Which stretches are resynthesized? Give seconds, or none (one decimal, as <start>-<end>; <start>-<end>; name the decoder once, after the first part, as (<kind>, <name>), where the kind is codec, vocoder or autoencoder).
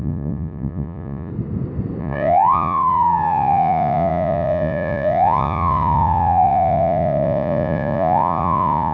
0.0-1.3 (vocoder, Vocos); 2.0-8.9